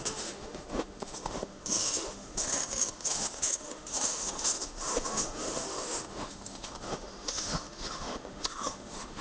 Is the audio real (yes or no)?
no